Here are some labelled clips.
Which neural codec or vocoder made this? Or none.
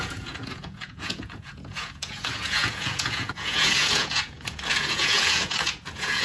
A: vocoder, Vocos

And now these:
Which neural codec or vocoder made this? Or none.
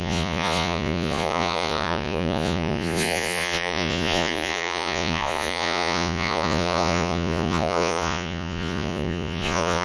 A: vocoder, Vocos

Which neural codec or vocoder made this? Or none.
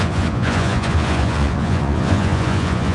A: vocoder, Vocos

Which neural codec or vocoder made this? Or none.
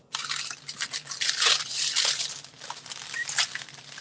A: none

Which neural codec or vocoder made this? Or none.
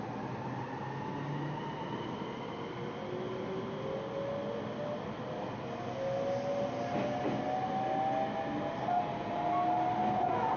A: none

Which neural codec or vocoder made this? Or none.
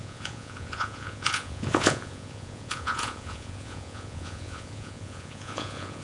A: vocoder, Vocos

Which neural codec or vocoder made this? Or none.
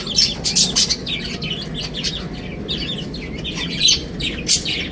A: none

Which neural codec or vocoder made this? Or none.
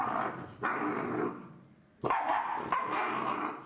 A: none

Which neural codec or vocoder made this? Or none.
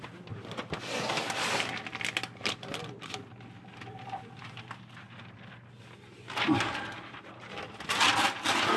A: none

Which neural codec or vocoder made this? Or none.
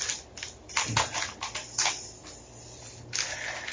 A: none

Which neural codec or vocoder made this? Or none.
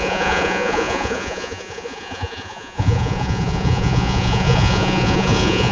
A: vocoder, Vocos